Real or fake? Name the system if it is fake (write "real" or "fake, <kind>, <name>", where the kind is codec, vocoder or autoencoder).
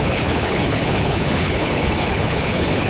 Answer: fake, codec, HILCodec